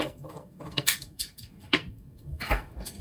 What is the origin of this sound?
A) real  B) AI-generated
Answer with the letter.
B